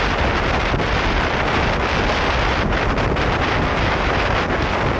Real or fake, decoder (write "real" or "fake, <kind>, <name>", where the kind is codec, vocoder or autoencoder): real